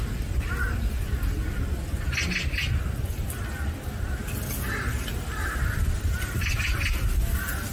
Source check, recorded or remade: recorded